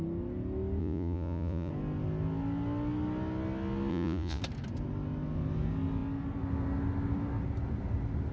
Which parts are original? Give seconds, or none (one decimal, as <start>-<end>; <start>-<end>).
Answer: 0.0-0.8; 1.7-3.9; 4.4-8.3